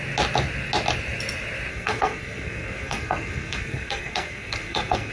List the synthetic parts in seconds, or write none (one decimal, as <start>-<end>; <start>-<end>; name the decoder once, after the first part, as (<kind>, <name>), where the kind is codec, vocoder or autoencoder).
1.7-5.1 (codec, SNAC)